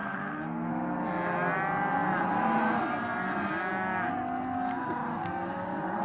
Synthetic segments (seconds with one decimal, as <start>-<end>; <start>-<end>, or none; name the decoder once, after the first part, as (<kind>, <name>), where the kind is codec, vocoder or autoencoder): 0.0-0.7 (codec, SNAC)